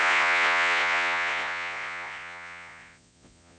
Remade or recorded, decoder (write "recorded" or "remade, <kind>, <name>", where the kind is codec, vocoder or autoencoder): remade, vocoder, Vocos